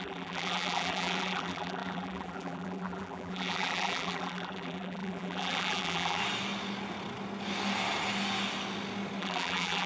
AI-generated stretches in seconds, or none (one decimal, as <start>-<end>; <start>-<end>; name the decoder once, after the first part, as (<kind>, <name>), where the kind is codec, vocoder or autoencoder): 0.0-6.2 (vocoder, BigVGAN v2); 9.2-9.9